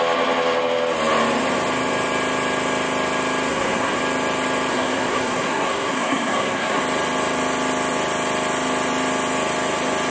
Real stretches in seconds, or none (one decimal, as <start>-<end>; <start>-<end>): 0.0-3.5; 4.0-4.7; 6.8-10.1